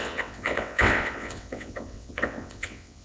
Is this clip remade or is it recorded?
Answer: remade